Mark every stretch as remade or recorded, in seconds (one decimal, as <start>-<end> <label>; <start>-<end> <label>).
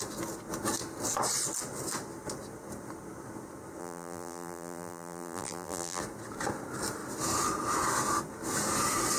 0.0-3.8 recorded; 3.8-6.0 remade; 6.0-9.2 recorded